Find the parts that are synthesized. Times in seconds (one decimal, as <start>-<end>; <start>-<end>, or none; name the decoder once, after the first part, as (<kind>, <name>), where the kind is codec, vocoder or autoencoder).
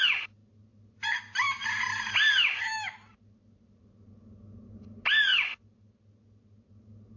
none